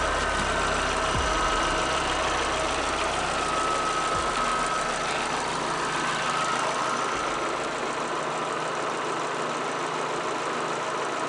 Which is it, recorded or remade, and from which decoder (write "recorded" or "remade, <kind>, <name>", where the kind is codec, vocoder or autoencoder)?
recorded